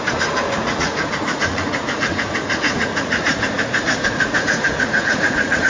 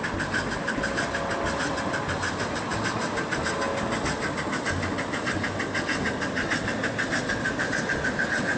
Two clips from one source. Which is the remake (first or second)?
first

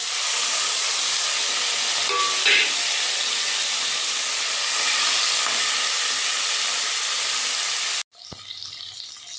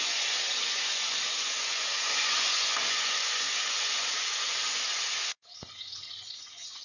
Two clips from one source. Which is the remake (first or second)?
second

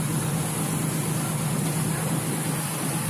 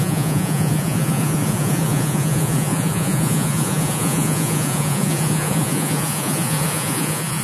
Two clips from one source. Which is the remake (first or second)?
second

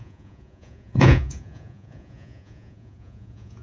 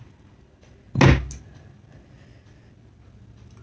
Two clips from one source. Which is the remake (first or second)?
first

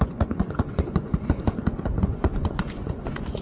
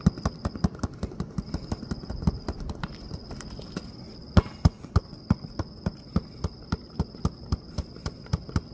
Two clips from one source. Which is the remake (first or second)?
first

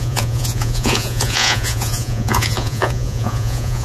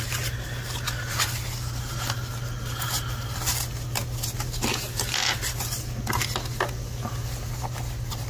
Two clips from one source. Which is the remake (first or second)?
first